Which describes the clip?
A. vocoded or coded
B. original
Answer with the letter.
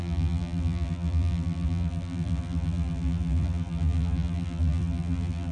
A